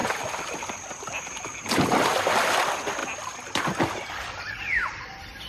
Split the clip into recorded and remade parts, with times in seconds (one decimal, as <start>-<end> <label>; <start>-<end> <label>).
0.0-2.2 remade; 2.2-3.0 recorded; 3.0-5.5 remade